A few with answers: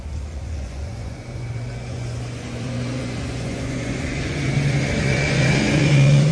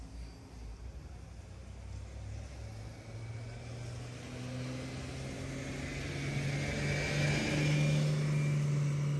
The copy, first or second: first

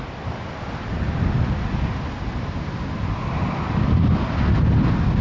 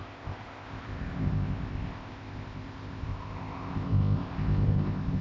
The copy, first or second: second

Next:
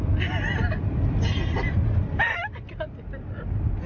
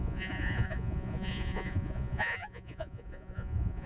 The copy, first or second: second